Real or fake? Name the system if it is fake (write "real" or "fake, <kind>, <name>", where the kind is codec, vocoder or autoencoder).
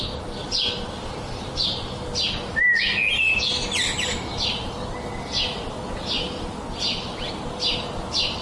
real